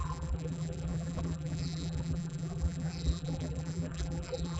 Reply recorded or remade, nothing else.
remade